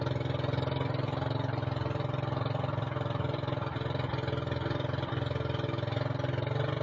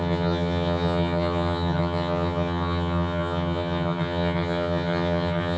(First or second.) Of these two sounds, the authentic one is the first